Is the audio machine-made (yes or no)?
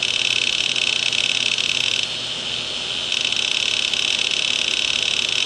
no